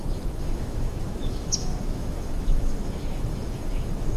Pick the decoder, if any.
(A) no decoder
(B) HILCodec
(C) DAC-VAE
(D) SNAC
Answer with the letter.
C